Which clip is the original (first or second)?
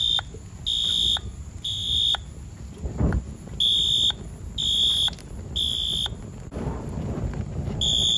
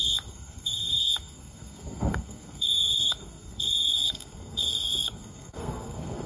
first